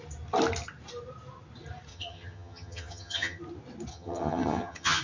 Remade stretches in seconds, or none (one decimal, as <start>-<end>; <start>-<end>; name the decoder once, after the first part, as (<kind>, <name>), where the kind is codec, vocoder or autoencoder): 1.9-3.4 (vocoder, HiFi-GAN); 3.9-5.0